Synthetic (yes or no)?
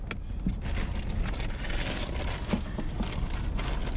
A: no